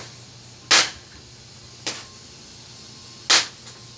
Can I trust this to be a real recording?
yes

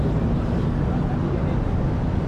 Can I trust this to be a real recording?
yes